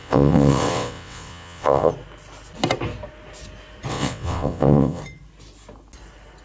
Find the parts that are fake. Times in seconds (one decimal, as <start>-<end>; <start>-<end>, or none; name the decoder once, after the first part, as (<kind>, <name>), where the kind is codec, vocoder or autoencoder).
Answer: 0.0-1.9 (vocoder, WaveNeXt); 3.9-5.0